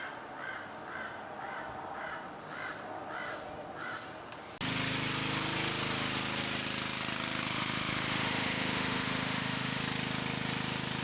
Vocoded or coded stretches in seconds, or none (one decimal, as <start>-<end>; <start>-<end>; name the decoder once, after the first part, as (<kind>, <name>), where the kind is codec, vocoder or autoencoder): 7.5-9.8 (autoencoder, DAC-VAE)